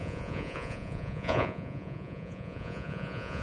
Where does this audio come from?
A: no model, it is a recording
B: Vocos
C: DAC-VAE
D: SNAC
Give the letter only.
B